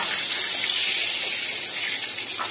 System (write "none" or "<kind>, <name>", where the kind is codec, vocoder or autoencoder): none